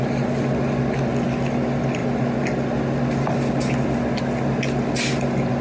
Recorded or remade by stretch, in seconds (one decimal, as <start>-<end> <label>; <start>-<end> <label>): 0.0-5.6 recorded